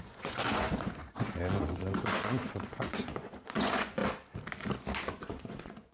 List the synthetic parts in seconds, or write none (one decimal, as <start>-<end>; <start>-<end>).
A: 0.0-4.0; 5.1-5.9